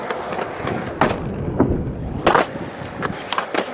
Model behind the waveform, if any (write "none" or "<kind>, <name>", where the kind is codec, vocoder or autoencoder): none